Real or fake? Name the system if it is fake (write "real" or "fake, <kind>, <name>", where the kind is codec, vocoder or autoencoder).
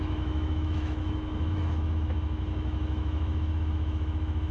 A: fake, autoencoder, DAC-VAE